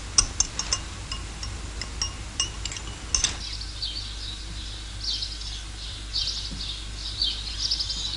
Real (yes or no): yes